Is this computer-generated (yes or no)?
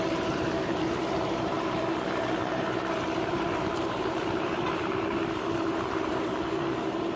yes